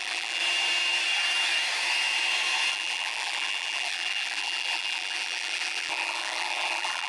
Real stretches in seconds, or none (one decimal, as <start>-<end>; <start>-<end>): 0.4-2.7